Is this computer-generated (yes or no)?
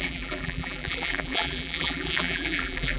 yes